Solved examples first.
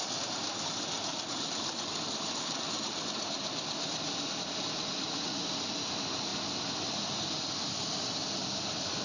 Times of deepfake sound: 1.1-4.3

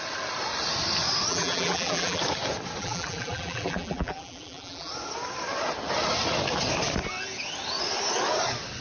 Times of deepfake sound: 1.3-2.2; 2.8-4.9

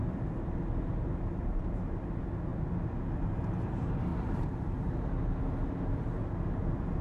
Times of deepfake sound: 1.5-2.1; 4.1-5.1

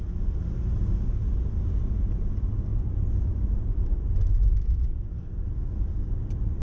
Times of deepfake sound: 2.7-6.6

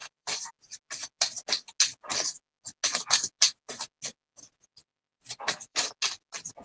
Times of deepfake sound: 0.0-0.5; 4.3-5.9

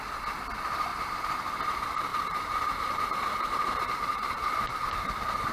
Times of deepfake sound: 0.9-1.6; 2.1-4.9